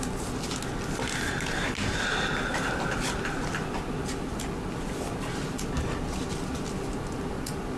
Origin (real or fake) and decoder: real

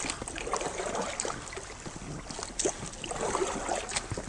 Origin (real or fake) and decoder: real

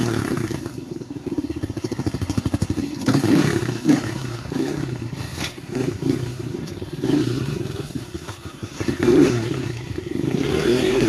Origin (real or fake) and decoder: fake, codec, SNAC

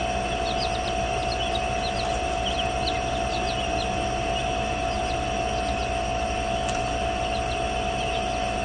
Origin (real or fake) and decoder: real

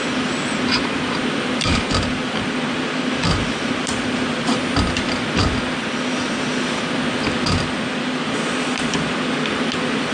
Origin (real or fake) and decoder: real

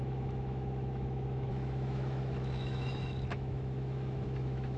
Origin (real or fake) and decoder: fake, autoencoder, DAC-VAE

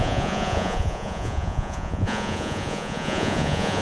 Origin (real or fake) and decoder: fake, vocoder, Vocos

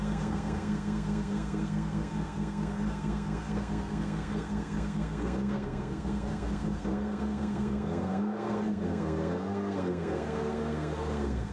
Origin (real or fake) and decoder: fake, codec, SNAC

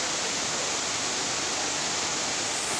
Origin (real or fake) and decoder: fake, vocoder, BigVGAN v2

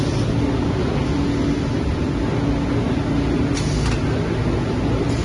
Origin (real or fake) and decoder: real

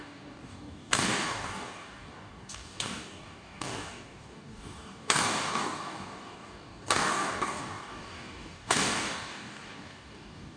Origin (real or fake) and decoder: fake, codec, DAC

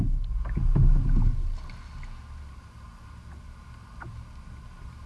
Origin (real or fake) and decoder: real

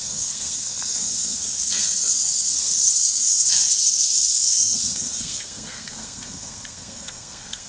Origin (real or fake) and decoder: fake, codec, SNAC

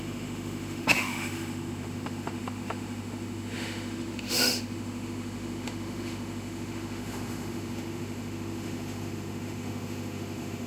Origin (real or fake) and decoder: fake, autoencoder, DAC-VAE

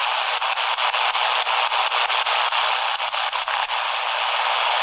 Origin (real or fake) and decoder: real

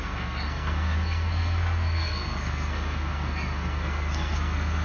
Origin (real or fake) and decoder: fake, codec, SNAC